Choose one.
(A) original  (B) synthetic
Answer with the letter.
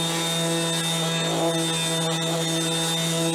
A